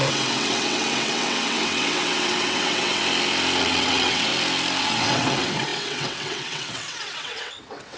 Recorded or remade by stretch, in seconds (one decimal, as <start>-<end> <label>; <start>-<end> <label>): 0.0-3.0 remade; 3.0-3.6 recorded; 3.6-4.3 remade; 4.3-4.8 recorded; 4.8-8.0 remade